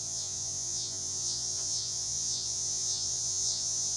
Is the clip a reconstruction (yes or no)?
yes